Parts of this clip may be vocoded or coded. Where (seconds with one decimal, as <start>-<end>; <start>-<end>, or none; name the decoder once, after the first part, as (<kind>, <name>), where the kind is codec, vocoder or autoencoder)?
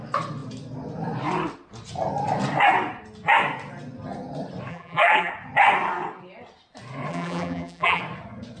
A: 4.7-5.3 (vocoder, BigVGAN v2); 7.1-8.0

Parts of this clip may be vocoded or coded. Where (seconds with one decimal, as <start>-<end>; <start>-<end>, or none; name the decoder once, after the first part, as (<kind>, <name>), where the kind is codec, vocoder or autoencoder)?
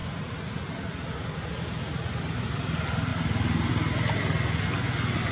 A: 3.1-3.7 (vocoder, BigVGAN v2)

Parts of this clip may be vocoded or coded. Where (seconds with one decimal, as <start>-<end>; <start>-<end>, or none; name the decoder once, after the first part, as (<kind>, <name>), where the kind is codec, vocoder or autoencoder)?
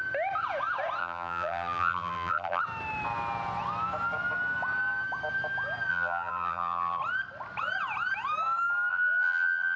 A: 1.0-2.6 (vocoder, BigVGAN v2); 5.9-7.0; 8.9-9.8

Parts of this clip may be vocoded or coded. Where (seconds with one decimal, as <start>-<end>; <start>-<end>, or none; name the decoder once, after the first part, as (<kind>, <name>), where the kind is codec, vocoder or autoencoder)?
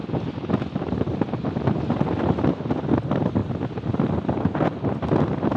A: 0.0-1.7 (vocoder, BigVGAN v2); 3.4-3.9